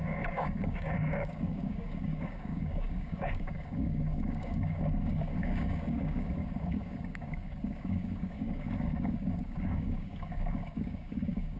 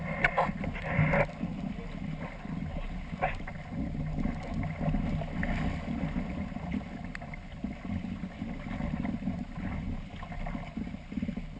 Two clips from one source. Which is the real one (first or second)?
second